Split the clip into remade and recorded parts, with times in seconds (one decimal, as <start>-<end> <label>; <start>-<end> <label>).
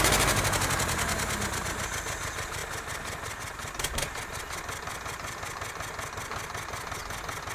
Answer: 0.0-7.5 recorded